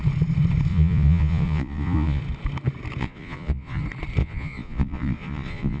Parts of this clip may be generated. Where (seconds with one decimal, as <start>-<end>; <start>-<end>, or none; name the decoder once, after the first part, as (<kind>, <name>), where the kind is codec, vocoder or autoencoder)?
0.7-2.2 (vocoder, Vocos); 3.0-3.8; 4.2-5.8